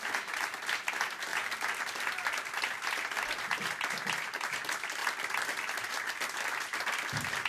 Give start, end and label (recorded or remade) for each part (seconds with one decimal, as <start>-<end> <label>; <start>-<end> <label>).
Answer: 0.0-5.0 recorded; 5.0-5.9 remade; 5.9-7.5 recorded